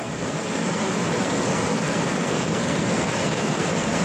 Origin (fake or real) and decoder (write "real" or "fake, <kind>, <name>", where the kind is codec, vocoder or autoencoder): fake, codec, SNAC